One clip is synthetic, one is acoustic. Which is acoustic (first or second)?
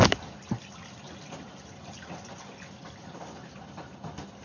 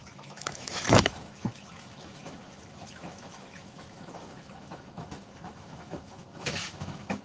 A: first